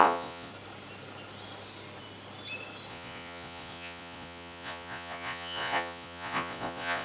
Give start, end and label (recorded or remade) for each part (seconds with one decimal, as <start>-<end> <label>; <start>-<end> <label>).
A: 0.0-0.5 remade; 0.5-2.9 recorded; 2.9-7.0 remade